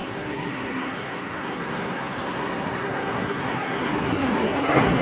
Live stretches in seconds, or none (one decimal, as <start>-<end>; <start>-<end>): none